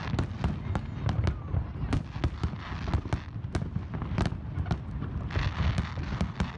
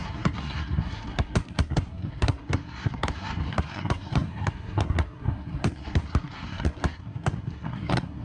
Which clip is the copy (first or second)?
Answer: second